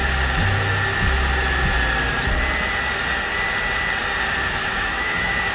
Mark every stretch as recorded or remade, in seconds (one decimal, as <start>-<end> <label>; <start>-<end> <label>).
0.0-4.6 recorded; 4.6-5.5 remade